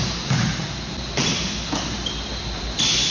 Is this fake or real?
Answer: real